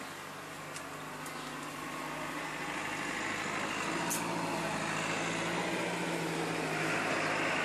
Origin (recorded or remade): recorded